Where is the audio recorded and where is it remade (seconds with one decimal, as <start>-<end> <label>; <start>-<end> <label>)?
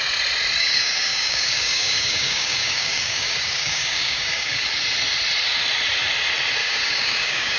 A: 0.0-0.6 recorded; 0.6-4.7 remade; 4.7-6.6 recorded; 6.6-7.6 remade